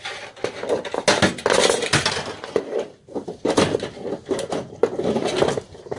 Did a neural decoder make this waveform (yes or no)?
no